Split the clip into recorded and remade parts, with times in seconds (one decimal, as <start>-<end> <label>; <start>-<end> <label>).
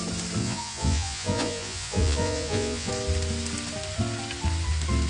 0.0-0.4 recorded; 0.4-2.9 remade; 2.9-5.1 recorded